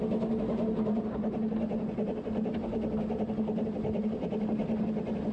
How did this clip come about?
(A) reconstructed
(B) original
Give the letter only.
B